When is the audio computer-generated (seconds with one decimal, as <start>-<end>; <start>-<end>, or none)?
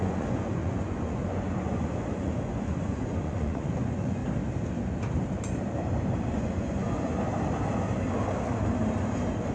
0.0-4.2; 6.3-7.1